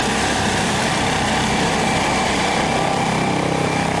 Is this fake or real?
real